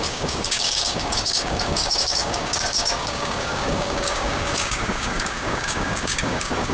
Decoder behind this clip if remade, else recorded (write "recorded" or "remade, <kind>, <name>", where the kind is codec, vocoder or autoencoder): remade, codec, DAC